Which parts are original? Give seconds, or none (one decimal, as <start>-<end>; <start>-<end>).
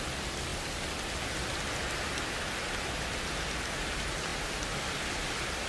0.0-5.7